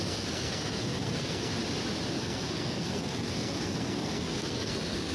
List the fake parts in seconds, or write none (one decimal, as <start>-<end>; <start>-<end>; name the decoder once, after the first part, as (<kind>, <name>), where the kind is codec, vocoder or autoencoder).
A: 0.0-1.5 (codec, SNAC); 2.1-5.1